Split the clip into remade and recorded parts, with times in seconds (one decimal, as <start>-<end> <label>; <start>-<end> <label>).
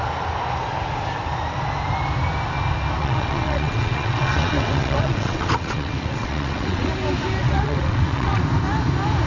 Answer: 0.0-3.0 recorded; 3.0-6.9 remade; 6.9-7.4 recorded; 7.4-8.4 remade; 8.4-9.3 recorded